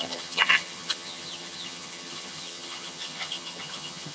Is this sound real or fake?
fake